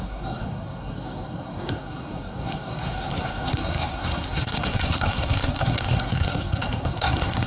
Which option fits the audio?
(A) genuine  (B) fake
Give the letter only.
B